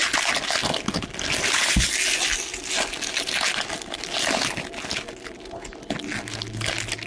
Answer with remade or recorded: recorded